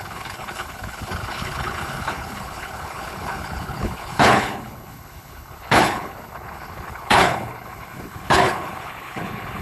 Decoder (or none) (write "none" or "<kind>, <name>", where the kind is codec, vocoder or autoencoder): codec, HILCodec